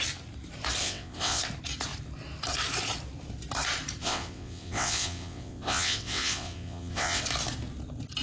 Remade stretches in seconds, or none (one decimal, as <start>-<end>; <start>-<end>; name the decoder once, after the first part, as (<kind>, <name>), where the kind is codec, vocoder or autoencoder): 0.8-1.4 (vocoder, WaveNeXt); 4.0-7.2